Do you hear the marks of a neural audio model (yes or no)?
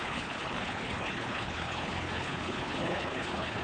yes